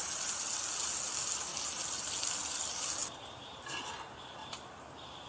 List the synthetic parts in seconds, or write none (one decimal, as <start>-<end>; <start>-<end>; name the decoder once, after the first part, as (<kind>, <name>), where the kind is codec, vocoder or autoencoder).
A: 4.4-5.3 (vocoder, BigVGAN v2)